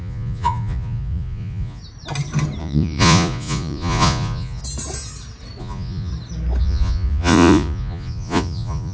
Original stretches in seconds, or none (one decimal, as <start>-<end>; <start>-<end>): 1.8-2.6; 4.6-5.6; 6.1-6.6